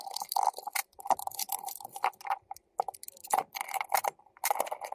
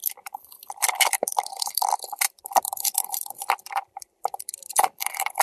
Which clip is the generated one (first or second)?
second